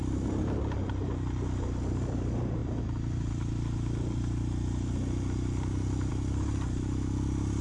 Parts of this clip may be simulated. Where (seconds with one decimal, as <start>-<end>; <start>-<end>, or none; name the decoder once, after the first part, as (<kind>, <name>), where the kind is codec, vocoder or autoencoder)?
none